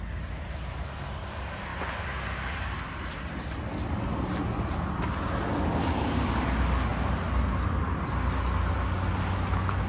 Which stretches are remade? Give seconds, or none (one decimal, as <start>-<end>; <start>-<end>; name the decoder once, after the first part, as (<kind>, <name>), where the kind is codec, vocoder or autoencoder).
none